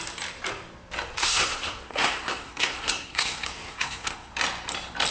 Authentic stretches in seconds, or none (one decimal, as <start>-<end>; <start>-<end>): 0.0-1.2; 4.3-5.1